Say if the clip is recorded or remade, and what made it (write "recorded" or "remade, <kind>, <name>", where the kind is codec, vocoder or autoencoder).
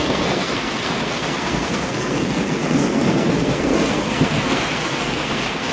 remade, codec, SNAC